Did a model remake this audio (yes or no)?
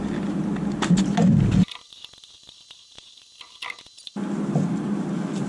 no